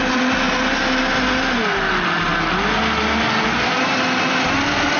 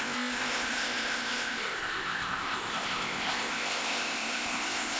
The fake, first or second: second